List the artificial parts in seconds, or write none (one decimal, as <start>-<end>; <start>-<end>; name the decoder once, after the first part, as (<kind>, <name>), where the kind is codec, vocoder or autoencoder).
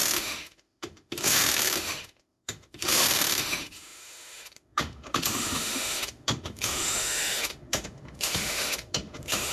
0.0-9.5 (autoencoder, DAC-VAE)